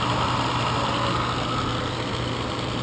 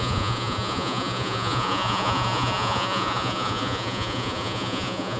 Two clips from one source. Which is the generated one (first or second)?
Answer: second